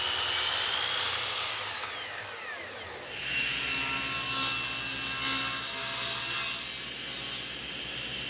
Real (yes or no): yes